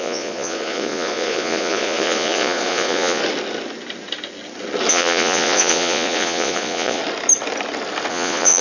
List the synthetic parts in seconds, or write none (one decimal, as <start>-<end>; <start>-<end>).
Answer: 0.0-3.2; 4.9-7.0; 8.1-8.6